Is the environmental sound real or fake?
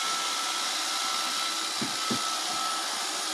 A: real